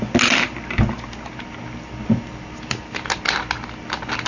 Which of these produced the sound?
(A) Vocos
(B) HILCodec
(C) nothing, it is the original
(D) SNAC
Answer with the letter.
C